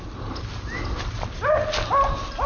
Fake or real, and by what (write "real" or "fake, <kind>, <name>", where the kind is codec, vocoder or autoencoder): real